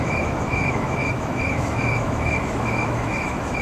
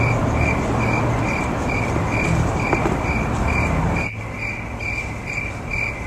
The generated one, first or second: first